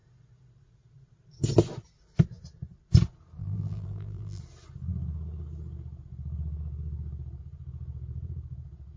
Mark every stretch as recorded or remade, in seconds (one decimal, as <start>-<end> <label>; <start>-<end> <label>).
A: 0.0-3.4 recorded; 3.4-4.4 remade; 4.4-9.0 recorded